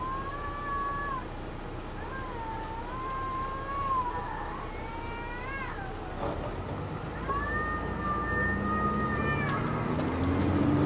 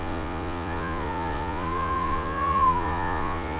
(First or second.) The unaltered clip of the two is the first